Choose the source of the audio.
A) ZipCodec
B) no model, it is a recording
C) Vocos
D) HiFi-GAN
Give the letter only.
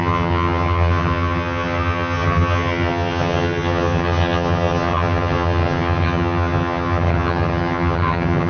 D